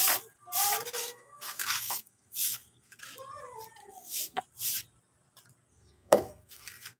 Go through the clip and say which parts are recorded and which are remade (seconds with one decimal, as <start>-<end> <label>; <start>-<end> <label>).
0.0-1.0 recorded; 1.0-3.0 remade; 3.0-3.8 recorded; 3.8-4.4 remade; 4.4-5.7 recorded; 5.7-7.0 remade